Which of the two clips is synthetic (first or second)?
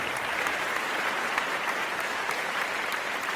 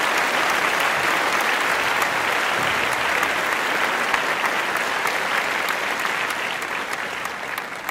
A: first